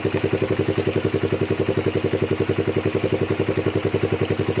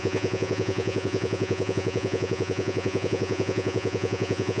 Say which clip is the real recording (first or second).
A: first